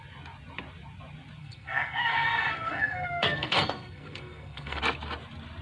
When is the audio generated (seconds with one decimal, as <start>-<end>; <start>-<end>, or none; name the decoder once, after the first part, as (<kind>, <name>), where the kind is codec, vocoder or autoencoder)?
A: 1.4-4.8 (codec, SNAC)